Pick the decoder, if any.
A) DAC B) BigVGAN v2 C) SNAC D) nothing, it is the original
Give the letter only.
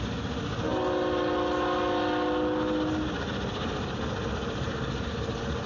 D